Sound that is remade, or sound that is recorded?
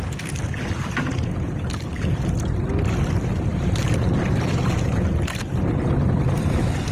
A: recorded